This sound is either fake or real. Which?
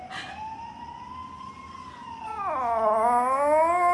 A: real